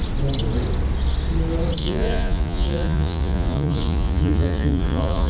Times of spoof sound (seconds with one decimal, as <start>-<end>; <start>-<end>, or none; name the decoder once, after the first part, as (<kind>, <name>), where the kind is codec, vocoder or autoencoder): 1.8-5.3 (vocoder, Vocos)